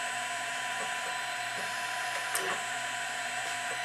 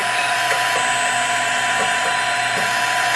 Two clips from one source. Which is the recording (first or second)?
second